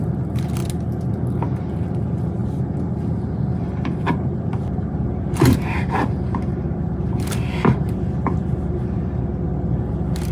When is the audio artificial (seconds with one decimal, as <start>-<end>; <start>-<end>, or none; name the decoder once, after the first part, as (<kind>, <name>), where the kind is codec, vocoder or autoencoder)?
0.0-0.6 (vocoder, BigVGAN v2); 1.1-2.4; 3.0-9.3; 9.9-10.3